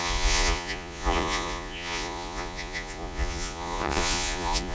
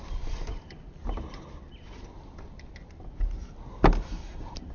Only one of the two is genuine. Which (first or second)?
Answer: second